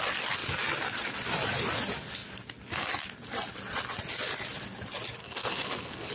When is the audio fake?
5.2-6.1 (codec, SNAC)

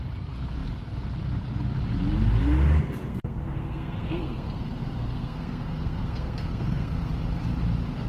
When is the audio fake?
3.1-7.1 (codec, SNAC)

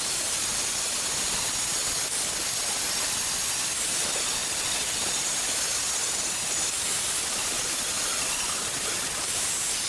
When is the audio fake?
none

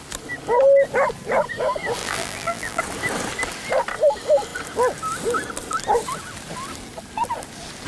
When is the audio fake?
2.0-2.8 (vocoder, BigVGAN v2)